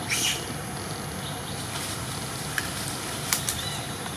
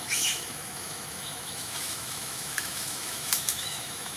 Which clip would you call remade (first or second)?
second